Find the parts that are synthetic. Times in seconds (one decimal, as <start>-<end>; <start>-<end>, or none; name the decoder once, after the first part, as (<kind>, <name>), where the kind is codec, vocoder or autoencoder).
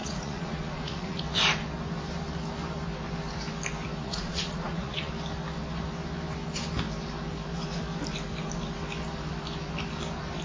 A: 0.0-1.2 (vocoder, Vocos); 4.0-5.1